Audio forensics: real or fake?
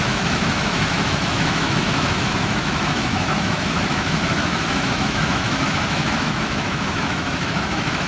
fake